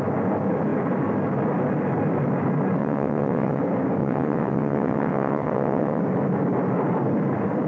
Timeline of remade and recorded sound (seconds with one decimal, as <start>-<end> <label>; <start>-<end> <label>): 0.0-2.8 recorded; 2.8-3.6 remade; 3.6-4.0 recorded; 4.0-6.0 remade; 6.0-7.7 recorded